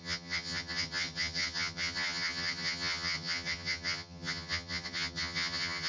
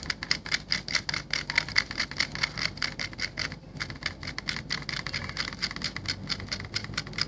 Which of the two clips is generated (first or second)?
first